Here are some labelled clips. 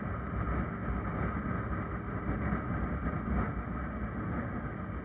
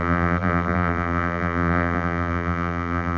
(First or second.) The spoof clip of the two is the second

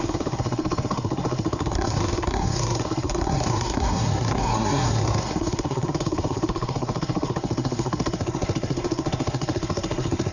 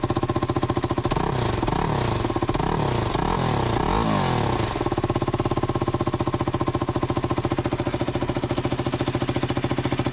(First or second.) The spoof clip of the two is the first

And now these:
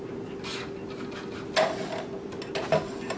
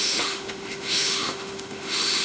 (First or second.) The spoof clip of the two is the second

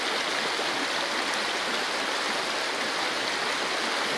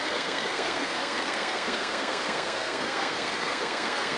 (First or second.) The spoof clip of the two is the second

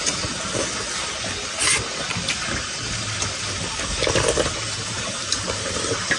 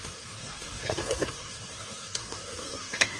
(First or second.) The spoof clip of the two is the second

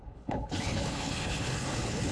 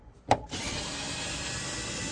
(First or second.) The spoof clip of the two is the first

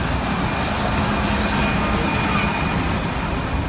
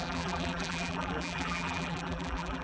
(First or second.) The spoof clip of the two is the second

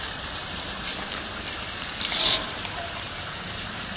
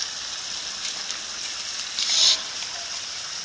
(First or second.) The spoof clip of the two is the first